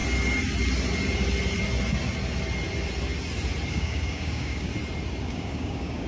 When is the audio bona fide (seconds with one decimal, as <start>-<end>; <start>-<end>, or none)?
0.0-3.7; 4.7-5.2